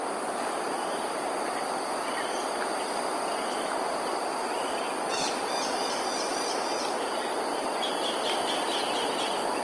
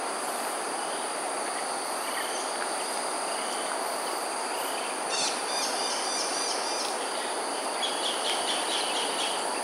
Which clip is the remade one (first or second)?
first